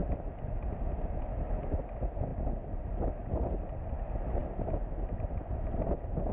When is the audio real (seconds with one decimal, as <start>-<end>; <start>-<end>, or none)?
0.0-6.3